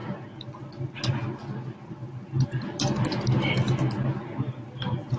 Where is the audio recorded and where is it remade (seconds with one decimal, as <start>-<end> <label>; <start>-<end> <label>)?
0.0-5.2 recorded